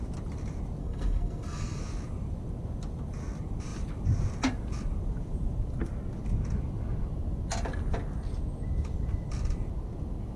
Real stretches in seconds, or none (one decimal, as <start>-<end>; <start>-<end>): 0.0-0.8; 1.8-10.4